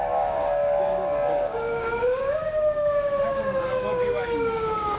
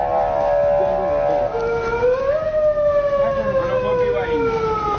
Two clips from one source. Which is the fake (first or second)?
first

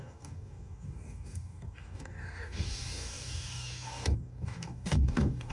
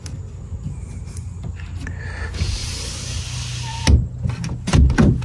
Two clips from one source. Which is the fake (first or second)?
first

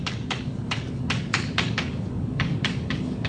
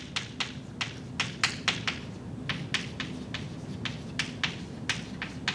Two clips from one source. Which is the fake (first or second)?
first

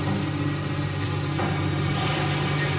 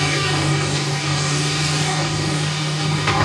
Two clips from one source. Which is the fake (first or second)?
second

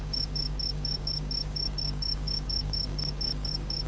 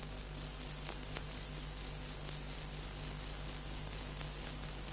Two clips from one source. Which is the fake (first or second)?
first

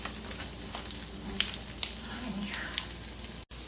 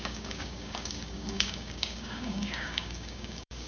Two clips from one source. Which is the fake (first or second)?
second